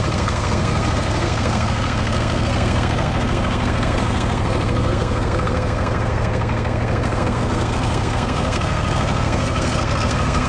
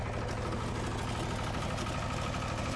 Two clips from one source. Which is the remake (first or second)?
first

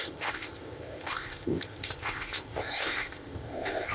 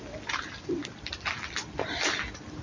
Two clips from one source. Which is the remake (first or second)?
first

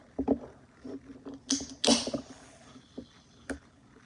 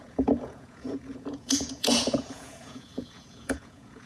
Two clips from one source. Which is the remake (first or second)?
second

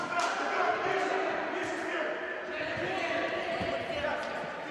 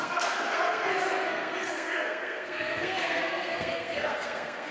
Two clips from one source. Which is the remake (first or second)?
second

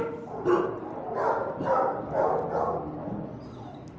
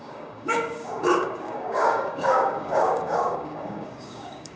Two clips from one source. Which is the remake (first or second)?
second